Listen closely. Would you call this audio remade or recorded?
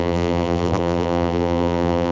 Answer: remade